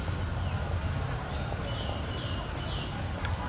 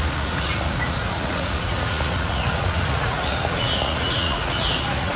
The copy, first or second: second